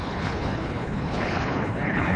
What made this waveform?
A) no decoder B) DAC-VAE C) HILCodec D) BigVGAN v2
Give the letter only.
C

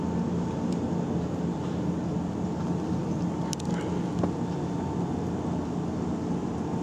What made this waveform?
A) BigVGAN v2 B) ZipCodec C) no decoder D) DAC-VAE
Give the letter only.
C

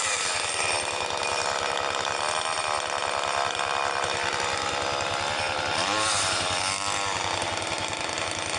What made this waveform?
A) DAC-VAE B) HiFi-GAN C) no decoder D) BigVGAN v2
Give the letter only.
C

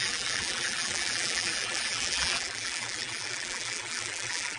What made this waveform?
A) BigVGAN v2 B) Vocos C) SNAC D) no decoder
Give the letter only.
A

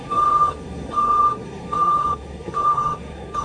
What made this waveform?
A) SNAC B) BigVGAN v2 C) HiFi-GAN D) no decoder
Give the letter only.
A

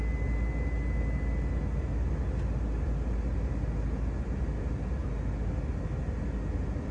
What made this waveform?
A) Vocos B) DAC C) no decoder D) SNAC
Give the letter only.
C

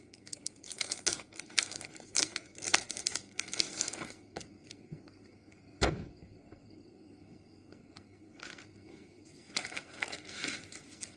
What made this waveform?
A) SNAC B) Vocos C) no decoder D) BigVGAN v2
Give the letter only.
A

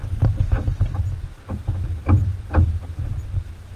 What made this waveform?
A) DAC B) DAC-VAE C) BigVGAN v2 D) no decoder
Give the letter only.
D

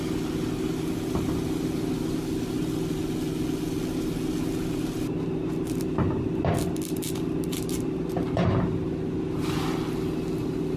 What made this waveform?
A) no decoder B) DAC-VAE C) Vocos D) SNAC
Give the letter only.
A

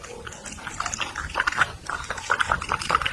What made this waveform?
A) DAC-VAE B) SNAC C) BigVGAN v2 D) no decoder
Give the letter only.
D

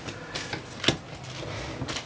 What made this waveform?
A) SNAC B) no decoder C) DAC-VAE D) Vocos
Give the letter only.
B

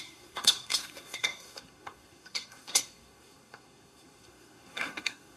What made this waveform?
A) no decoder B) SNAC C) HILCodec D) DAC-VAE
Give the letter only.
B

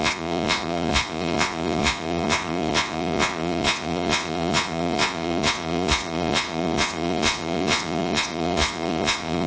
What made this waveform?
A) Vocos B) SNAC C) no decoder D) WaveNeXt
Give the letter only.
A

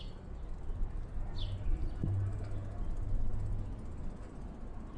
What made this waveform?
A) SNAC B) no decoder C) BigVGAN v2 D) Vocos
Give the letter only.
B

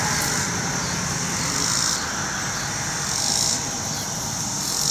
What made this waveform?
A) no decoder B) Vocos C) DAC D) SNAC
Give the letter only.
A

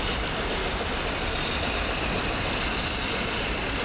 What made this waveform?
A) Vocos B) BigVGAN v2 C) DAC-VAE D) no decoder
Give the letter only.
B